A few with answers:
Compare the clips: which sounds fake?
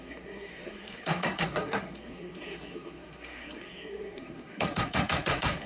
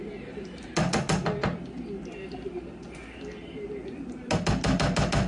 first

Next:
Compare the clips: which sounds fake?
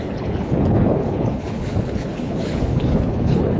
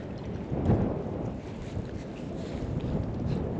first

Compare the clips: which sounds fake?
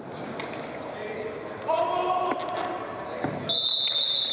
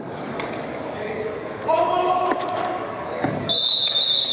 second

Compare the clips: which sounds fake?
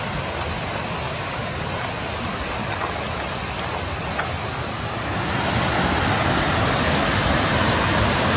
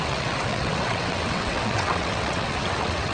second